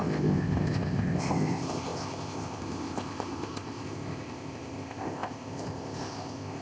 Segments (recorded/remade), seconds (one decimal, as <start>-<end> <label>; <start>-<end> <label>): 0.0-6.6 remade